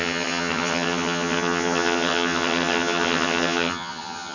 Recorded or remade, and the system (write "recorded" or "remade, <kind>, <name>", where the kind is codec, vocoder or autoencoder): remade, vocoder, HiFi-GAN